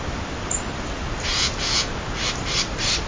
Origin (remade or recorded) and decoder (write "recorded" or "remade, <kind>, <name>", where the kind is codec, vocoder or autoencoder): recorded